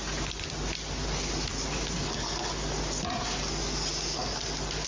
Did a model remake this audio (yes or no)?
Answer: no